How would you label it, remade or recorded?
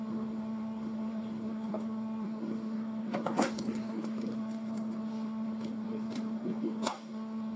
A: remade